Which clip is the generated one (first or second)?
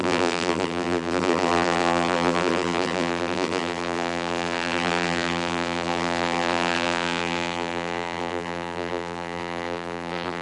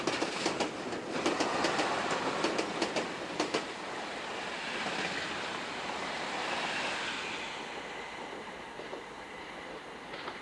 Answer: first